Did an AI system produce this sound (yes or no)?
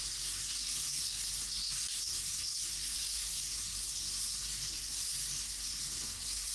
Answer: yes